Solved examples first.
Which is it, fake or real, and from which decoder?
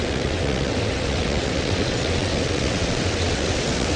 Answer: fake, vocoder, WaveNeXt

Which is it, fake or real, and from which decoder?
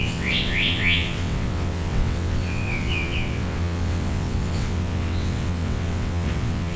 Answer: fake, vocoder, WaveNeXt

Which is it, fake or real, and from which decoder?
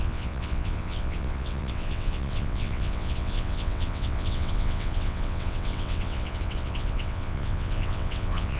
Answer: fake, vocoder, WaveNeXt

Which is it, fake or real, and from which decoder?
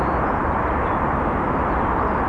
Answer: real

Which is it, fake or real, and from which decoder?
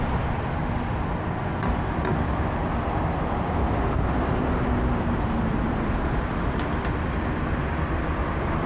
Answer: real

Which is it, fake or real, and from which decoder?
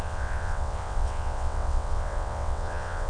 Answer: fake, vocoder, WaveNeXt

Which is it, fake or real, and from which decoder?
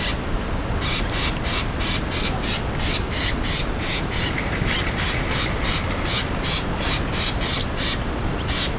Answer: real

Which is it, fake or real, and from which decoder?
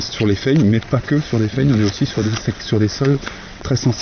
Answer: fake, vocoder, WaveNeXt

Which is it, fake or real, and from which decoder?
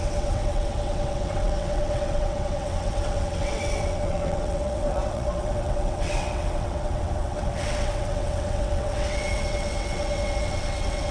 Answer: fake, vocoder, WaveNeXt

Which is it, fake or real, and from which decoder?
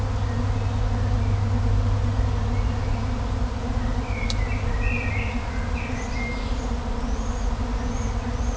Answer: real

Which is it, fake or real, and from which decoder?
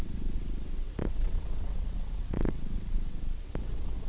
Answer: fake, vocoder, WaveNeXt